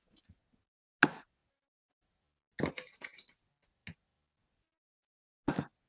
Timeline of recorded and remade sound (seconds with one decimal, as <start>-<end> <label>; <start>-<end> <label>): 0.0-5.9 recorded